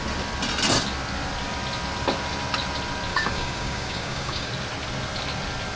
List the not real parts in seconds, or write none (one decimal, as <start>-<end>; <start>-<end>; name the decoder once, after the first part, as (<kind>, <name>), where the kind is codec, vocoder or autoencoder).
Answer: 3.1-4.5 (codec, DAC)